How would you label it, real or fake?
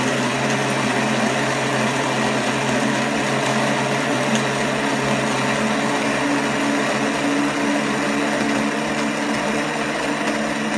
real